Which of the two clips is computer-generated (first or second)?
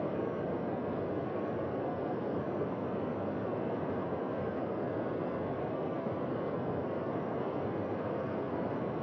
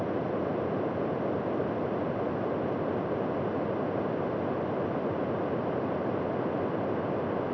first